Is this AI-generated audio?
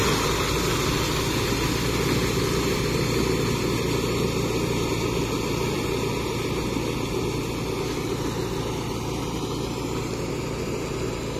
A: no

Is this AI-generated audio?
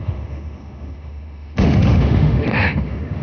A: yes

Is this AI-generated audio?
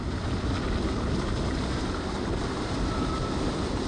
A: no